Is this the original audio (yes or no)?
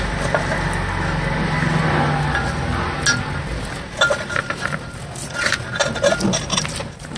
yes